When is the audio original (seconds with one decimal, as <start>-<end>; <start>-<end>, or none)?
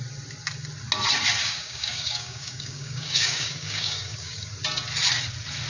0.0-1.4; 4.5-5.7